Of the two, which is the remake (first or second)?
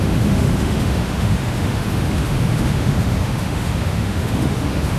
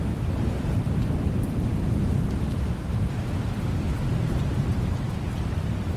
first